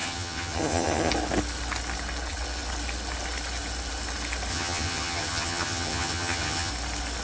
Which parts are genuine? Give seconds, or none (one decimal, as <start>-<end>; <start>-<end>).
1.1-4.5; 6.7-7.2